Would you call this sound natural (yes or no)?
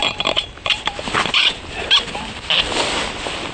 no